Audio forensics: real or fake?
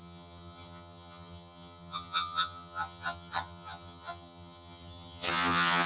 fake